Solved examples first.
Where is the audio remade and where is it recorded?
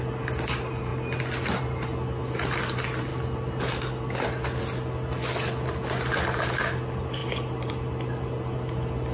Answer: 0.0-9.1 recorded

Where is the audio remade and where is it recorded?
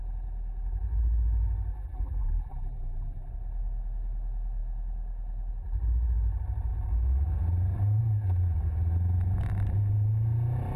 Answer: 0.0-1.7 recorded; 1.7-3.3 remade; 3.3-10.8 recorded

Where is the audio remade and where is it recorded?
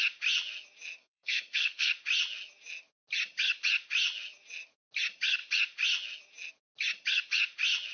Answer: 0.0-1.0 recorded; 1.0-1.9 remade; 1.9-7.9 recorded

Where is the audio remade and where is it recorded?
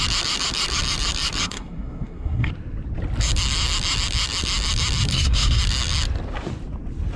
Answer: 0.0-1.4 recorded; 1.4-2.5 remade; 2.5-5.1 recorded; 5.1-5.6 remade; 5.6-7.2 recorded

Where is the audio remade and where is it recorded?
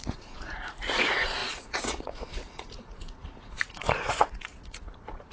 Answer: 0.0-5.3 remade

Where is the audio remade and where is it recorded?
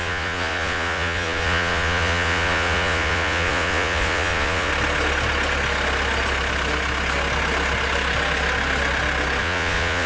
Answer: 0.0-4.7 remade; 4.7-9.4 recorded; 9.4-10.1 remade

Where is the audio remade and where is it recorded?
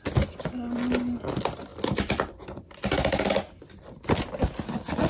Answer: 0.0-5.1 recorded